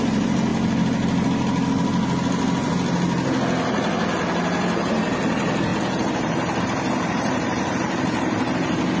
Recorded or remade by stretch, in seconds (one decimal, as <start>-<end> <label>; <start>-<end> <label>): 0.0-0.5 remade; 0.5-4.6 recorded; 4.6-9.0 remade